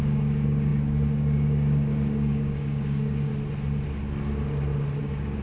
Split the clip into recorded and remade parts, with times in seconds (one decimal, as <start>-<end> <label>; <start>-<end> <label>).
0.0-3.3 remade; 3.3-5.0 recorded; 5.0-5.4 remade